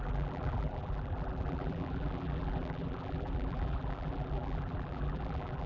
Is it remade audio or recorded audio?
remade